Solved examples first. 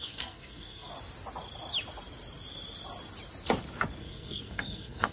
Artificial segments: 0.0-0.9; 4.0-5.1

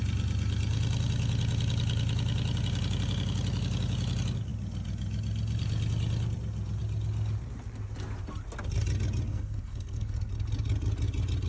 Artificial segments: 9.3-10.3

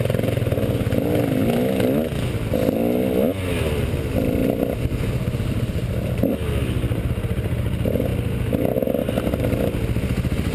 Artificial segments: none

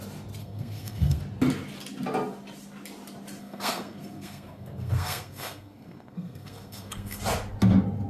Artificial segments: 0.4-1.2; 3.4-7.2

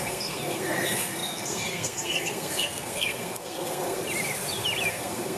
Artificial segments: 0.0-4.0; 4.9-5.4

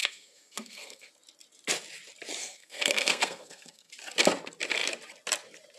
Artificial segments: 0.0-1.1; 2.4-3.9